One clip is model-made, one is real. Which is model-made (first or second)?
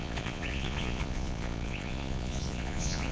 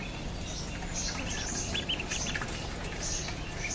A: first